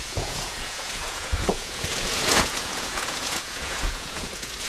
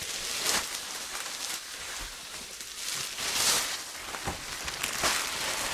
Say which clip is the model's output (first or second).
first